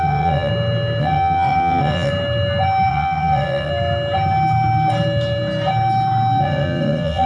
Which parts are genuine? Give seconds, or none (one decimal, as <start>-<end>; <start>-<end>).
0.5-1.0; 2.1-2.9; 3.7-6.4